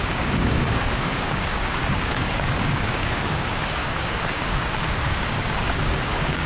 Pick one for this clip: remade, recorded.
remade